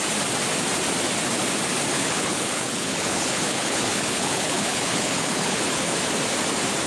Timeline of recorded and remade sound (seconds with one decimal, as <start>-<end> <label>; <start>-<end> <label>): 0.0-1.9 recorded; 1.9-6.0 remade; 6.0-6.9 recorded